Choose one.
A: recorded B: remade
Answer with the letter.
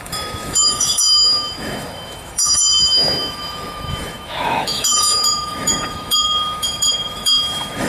B